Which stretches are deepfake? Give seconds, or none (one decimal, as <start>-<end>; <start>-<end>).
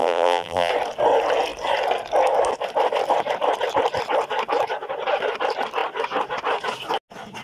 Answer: 0.0-0.7